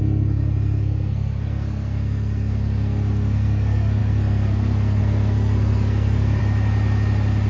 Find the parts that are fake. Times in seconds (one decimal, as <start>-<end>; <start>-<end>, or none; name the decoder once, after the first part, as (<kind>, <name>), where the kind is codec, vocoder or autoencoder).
0.0-6.4 (codec, SNAC)